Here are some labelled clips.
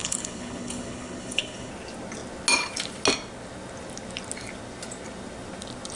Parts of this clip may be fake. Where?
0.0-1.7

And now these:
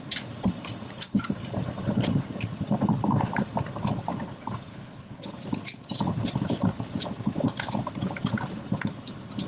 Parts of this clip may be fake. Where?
4.7-5.3

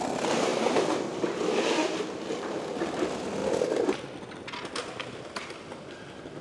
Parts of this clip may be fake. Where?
none

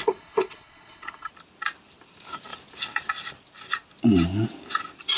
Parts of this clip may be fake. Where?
0.0-1.3

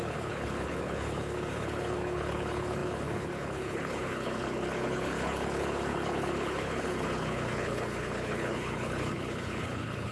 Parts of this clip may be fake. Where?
0.0-10.1

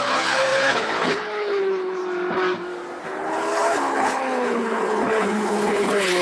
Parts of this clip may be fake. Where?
0.0-2.0; 3.0-6.2

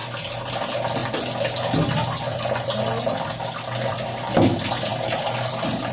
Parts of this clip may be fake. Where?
none

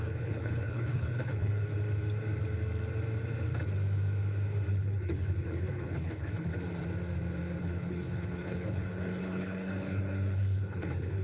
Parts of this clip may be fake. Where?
0.0-1.6; 4.7-6.5; 7.6-11.2